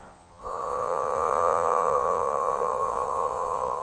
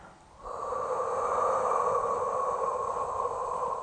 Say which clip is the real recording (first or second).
second